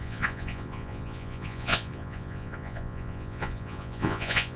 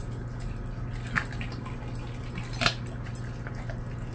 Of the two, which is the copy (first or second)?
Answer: first